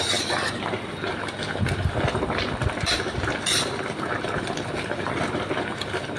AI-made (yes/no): yes